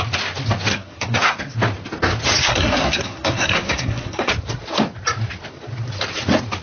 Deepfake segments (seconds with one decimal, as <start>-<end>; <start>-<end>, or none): 0.7-1.4; 2.4-4.3